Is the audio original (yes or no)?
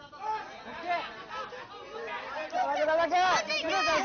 yes